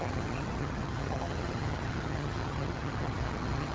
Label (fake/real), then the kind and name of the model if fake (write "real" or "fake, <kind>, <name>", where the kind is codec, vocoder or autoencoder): fake, vocoder, HiFi-GAN